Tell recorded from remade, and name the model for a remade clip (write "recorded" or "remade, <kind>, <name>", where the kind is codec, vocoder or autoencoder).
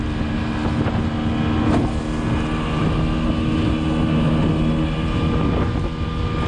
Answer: recorded